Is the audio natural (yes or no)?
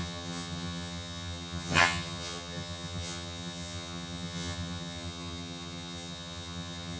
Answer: no